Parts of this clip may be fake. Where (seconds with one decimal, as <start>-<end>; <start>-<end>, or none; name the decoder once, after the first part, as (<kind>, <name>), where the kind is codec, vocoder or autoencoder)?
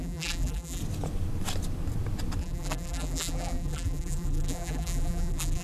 0.0-0.8 (vocoder, BigVGAN v2); 2.4-5.6